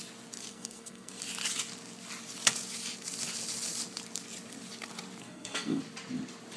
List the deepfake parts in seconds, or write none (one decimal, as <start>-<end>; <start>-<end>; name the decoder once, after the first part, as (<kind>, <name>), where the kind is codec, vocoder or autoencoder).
0.5-1.2 (codec, SNAC); 5.2-5.8